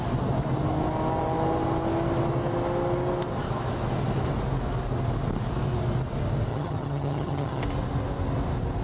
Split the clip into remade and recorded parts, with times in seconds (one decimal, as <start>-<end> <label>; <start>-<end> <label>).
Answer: 0.0-6.5 recorded; 6.5-7.6 remade; 7.6-8.8 recorded